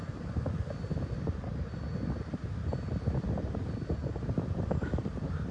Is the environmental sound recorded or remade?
recorded